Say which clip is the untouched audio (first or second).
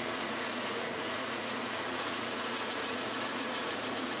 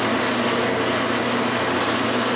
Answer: second